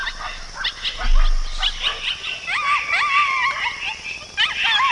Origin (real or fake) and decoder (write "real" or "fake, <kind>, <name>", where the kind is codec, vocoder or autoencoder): real